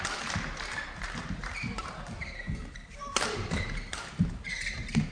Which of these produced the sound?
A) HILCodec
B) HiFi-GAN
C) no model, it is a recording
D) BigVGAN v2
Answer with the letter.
D